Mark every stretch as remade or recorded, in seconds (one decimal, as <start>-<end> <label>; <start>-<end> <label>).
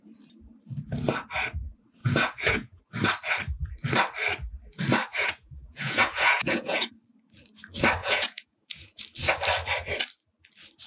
0.0-2.0 recorded; 2.0-2.8 remade; 2.8-5.1 recorded; 5.1-6.9 remade; 6.9-8.0 recorded; 8.0-9.0 remade; 9.0-10.9 recorded